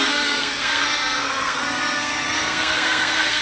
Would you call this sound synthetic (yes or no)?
yes